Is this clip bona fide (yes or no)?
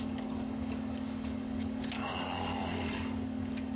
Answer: no